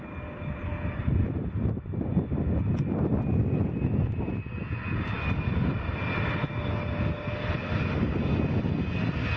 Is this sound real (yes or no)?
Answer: yes